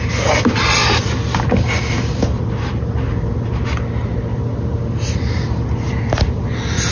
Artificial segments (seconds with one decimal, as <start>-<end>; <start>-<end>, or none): none